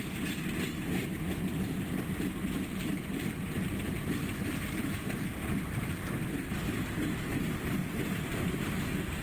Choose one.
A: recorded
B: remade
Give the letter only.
A